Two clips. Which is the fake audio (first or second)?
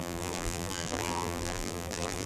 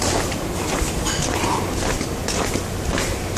first